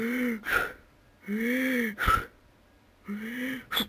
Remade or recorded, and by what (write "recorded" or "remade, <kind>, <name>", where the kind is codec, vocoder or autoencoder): recorded